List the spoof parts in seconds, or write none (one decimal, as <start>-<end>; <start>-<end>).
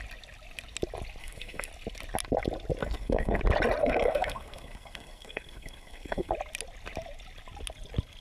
1.2-1.7; 2.8-3.4; 3.8-6.3